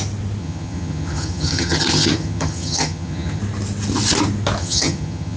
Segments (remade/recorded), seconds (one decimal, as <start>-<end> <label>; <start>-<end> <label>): 0.0-0.4 recorded; 0.4-3.4 remade; 3.4-4.6 recorded; 4.6-5.4 remade